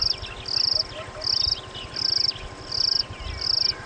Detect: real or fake real